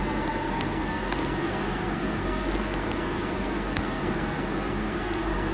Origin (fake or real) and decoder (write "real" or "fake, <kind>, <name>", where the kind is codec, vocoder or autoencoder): fake, codec, SNAC